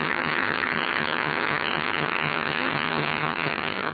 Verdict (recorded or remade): remade